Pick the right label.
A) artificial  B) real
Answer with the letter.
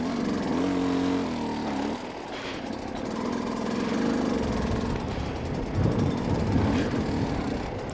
B